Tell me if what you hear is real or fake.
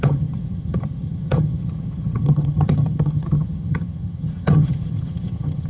fake